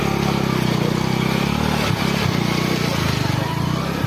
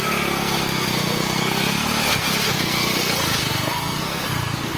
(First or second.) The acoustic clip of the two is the first